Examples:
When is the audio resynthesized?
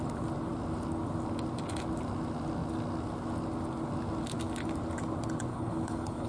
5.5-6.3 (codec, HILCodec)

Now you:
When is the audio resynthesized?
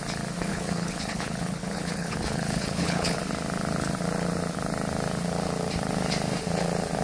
0.5-3.2 (codec, HILCodec)